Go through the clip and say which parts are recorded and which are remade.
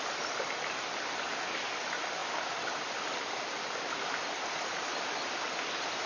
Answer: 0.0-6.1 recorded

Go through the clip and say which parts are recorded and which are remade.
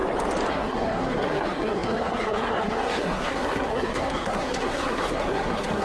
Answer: 0.0-0.5 recorded; 0.5-5.8 remade